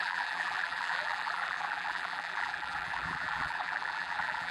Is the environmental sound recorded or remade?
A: remade